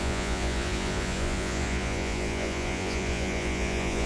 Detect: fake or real fake